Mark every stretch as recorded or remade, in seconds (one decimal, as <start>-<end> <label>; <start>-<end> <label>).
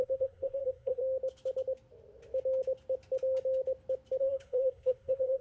0.0-1.0 remade; 1.0-4.2 recorded; 4.2-5.4 remade